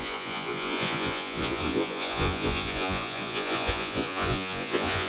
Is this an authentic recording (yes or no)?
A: no